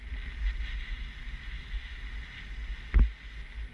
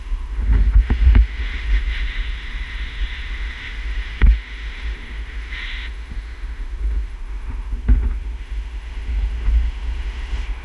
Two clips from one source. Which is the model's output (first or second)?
second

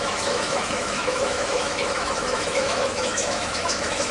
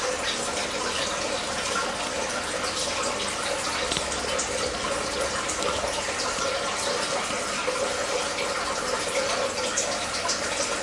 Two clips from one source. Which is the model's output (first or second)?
first